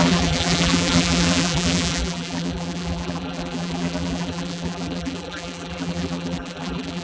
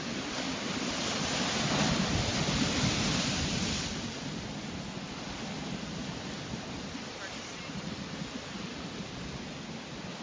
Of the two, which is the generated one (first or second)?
first